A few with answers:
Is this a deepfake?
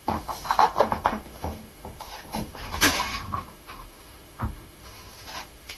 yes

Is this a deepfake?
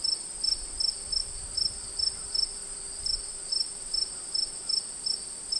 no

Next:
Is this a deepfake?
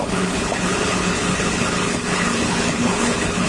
yes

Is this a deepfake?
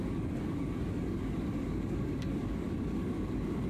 yes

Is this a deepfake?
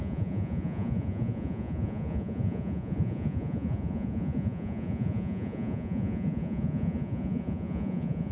yes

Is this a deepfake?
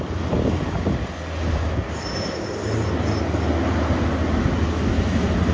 no